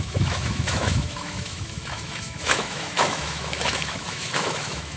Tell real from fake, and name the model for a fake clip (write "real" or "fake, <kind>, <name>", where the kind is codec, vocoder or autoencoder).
fake, autoencoder, DAC-VAE